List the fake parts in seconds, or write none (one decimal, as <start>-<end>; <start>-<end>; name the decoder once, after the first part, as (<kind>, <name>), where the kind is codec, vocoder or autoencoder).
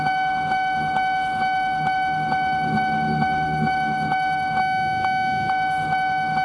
0.0-4.6 (autoencoder, DAC-VAE); 5.5-6.4